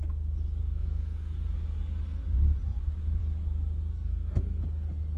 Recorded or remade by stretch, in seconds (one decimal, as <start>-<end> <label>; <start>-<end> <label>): 0.0-0.6 recorded; 0.6-1.4 remade; 1.4-3.9 recorded; 3.9-4.6 remade; 4.6-5.2 recorded